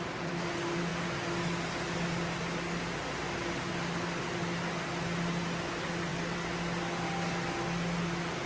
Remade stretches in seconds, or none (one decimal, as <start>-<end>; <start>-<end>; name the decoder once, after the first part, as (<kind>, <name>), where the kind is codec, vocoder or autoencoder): none